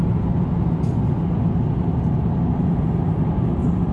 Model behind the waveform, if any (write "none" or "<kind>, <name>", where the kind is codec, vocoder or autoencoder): none